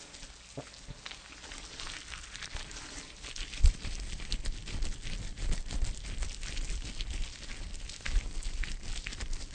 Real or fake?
real